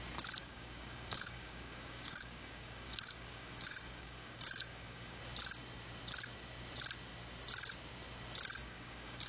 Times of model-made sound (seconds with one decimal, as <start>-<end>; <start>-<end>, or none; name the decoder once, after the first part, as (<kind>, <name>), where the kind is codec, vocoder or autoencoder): 0.4-5.2 (codec, DAC); 8.6-9.3